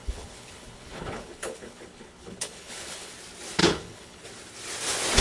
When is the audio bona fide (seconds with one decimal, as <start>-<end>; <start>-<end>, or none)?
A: 3.1-3.6; 4.2-5.2